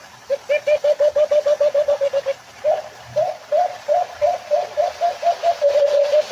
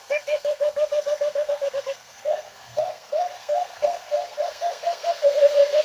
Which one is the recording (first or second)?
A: first